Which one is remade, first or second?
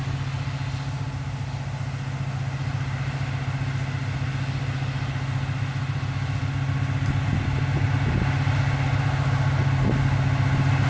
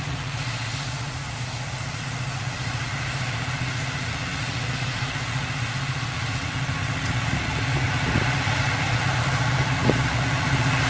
second